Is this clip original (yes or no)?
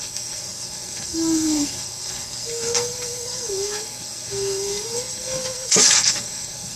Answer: no